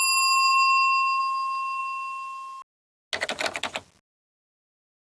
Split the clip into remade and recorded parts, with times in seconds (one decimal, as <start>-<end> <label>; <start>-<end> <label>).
0.0-5.0 recorded